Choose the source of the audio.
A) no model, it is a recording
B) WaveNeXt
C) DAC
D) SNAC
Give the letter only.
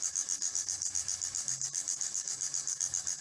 C